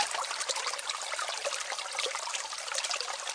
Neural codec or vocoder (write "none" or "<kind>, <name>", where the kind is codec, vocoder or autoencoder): none